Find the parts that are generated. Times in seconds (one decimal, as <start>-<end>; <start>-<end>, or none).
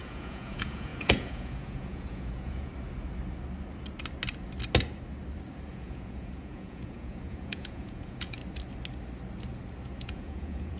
0.0-2.7; 5.7-8.4; 10.0-10.8